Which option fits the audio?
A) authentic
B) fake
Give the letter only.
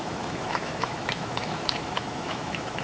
B